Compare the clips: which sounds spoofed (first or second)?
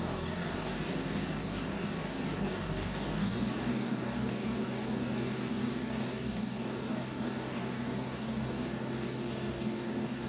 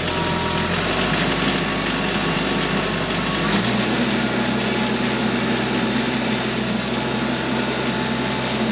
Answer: first